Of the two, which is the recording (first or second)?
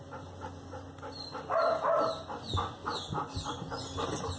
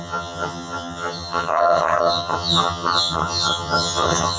first